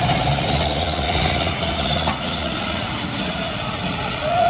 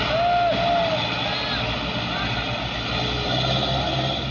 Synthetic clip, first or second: first